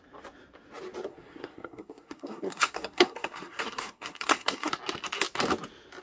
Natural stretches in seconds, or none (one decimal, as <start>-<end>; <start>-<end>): 0.0-1.1; 4.7-6.0

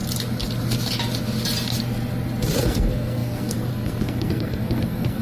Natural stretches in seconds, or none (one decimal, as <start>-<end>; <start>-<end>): 0.0-2.6

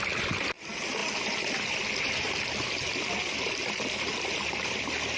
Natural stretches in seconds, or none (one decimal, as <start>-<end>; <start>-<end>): 0.0-5.2

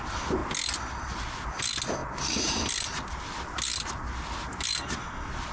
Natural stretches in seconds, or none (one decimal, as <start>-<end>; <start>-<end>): 0.0-5.5

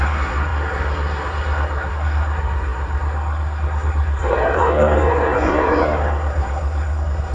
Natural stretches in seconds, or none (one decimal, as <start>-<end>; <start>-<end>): none

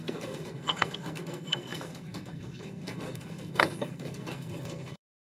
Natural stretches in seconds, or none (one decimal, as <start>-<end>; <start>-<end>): none

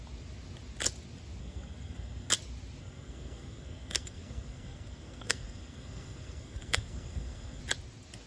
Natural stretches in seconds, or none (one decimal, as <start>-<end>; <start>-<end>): 0.0-1.4; 2.3-2.8; 7.6-8.3

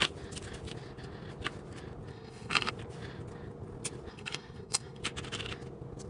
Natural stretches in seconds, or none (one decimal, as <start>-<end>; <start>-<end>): 0.0-2.1; 2.7-4.1; 5.0-6.1